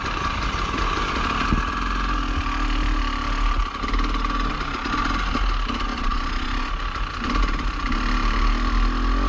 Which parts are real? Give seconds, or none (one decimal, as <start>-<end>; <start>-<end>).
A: 0.0-5.9; 6.8-9.3